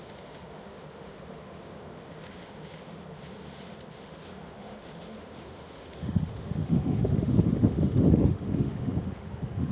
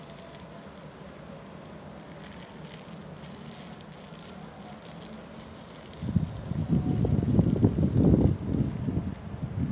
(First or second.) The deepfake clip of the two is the first